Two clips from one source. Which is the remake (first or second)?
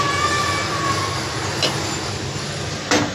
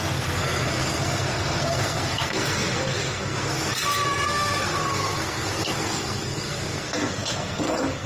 second